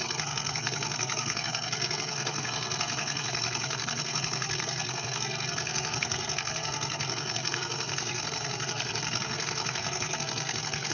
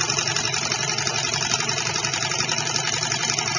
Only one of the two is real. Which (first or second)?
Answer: second